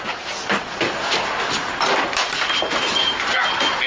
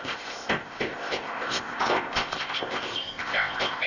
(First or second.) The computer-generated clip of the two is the second